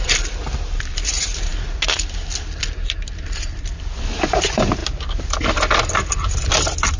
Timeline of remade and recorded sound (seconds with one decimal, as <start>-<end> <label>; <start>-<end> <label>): 0.0-1.5 remade; 1.5-2.6 recorded; 2.6-7.0 remade